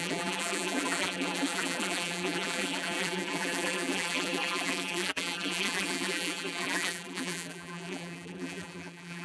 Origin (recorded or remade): remade